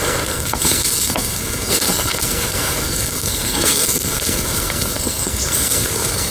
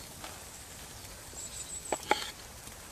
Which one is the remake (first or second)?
first